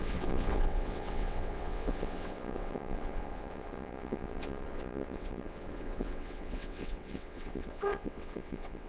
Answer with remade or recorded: remade